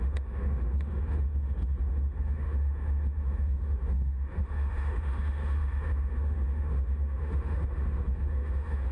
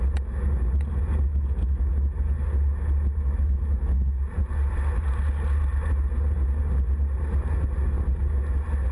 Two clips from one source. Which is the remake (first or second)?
first